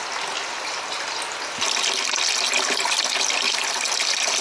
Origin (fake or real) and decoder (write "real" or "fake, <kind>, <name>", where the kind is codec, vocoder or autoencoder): real